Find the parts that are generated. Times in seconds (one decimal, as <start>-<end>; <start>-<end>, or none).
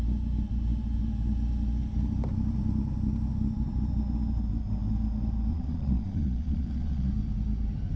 5.5-7.1